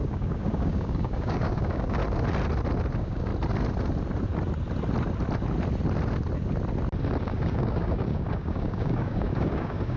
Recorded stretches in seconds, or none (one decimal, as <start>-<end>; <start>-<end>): 2.0-2.9; 3.3-7.2